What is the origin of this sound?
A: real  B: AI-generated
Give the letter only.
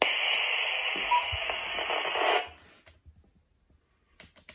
A